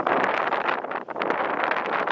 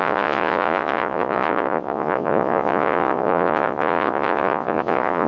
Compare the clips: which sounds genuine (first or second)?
first